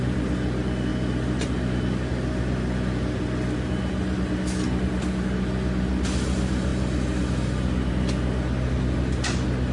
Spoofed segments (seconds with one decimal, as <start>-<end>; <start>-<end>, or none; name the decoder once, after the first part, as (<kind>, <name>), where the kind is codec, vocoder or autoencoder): none